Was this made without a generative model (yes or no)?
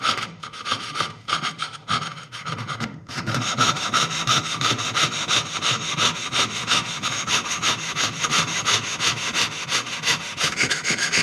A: no